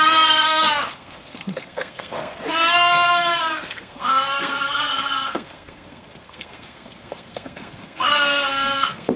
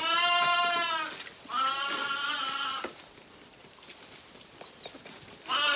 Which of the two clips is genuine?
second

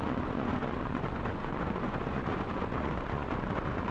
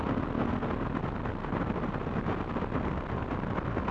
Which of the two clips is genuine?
second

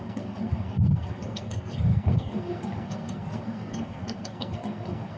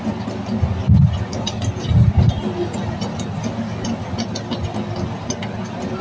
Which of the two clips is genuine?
second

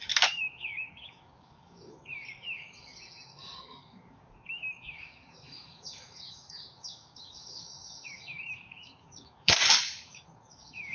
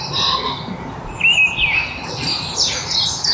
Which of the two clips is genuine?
second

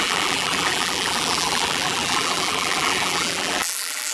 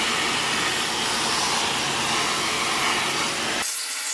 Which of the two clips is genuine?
second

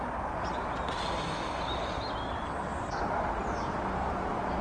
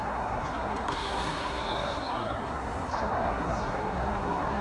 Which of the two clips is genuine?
first